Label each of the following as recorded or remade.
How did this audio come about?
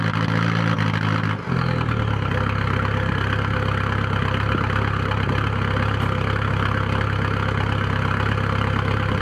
recorded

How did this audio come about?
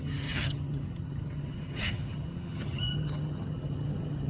remade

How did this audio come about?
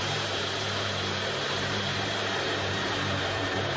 remade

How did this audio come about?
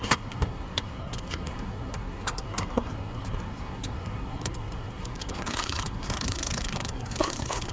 remade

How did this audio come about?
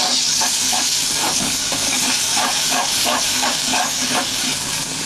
remade